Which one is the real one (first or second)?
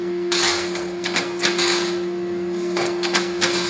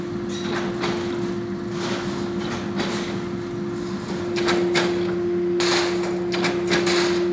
second